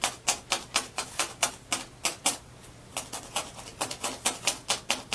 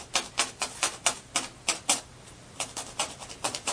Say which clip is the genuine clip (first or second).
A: first